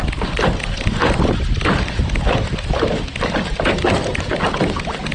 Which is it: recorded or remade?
recorded